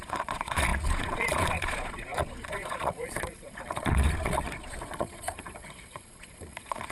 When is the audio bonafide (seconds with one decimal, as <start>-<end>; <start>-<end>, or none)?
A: none